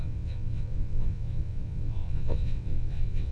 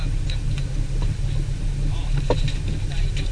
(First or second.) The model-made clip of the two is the first